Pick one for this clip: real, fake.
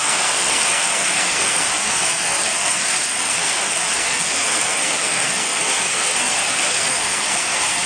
fake